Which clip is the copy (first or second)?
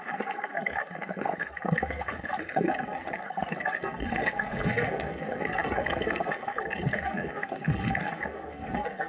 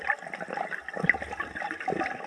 first